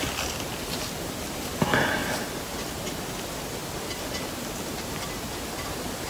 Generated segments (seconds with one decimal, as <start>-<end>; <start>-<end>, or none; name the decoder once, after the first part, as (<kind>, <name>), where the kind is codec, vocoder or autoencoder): none